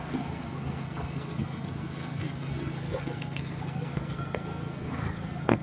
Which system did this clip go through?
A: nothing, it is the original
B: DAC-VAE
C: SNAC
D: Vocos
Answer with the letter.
C